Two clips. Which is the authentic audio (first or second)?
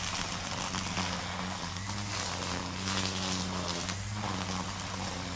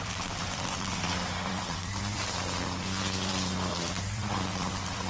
first